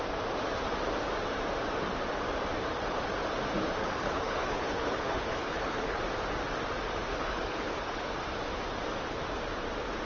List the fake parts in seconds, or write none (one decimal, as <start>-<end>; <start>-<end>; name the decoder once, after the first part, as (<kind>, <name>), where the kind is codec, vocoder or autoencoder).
3.8-6.0 (codec, HILCodec); 7.1-8.2